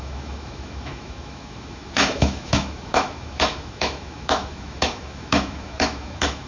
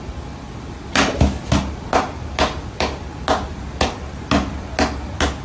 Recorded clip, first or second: second